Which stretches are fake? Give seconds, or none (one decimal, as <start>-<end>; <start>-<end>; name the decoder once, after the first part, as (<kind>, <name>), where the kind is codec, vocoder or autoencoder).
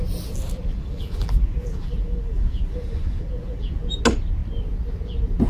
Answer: 0.7-4.0 (vocoder, BigVGAN v2)